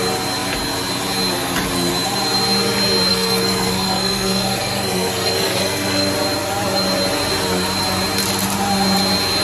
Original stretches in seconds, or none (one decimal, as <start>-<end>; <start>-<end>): 0.0-3.1; 6.1-9.4